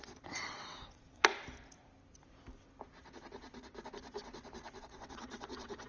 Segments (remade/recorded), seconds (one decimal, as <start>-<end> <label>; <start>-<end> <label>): 0.0-1.3 remade; 1.3-4.8 recorded; 4.8-5.9 remade